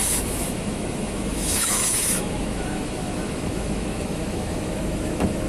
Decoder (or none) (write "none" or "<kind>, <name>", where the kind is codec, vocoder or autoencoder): autoencoder, DAC-VAE